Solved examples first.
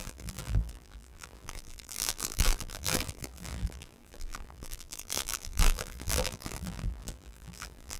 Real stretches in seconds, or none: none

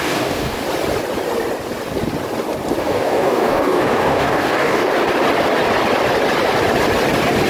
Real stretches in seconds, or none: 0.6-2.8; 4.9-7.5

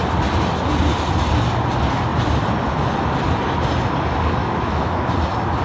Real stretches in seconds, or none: 0.0-4.4; 5.1-5.6